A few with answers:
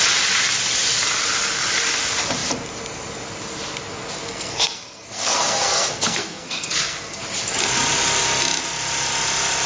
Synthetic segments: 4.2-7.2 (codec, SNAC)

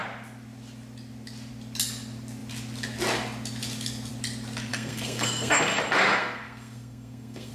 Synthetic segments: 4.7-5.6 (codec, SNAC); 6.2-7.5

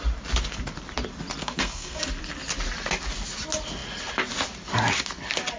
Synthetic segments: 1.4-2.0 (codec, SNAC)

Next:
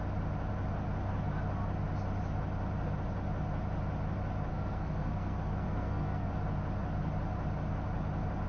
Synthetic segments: 4.5-6.3 (codec, SNAC)

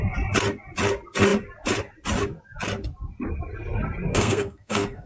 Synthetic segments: 4.1-5.1 (codec, SNAC)

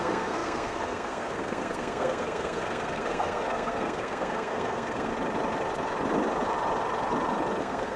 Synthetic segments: 0.0-5.1 (codec, SNAC); 7.6-8.0

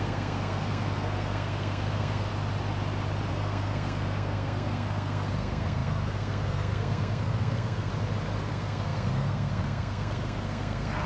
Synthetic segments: 0.0-2.3 (codec, SNAC); 3.3-7.9; 8.5-11.1

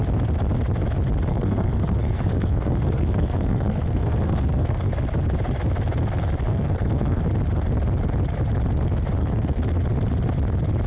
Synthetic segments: 1.3-4.9 (codec, SNAC); 6.5-7.2; 9.2-9.7